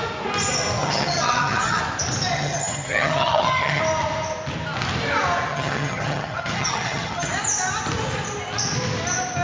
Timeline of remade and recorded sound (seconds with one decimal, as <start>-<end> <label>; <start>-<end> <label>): 0.0-0.8 recorded; 0.8-1.8 remade; 1.8-2.3 recorded; 2.3-3.8 remade; 3.8-5.5 recorded; 5.5-7.3 remade; 7.3-9.4 recorded